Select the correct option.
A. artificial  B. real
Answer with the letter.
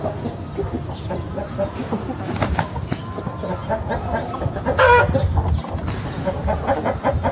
B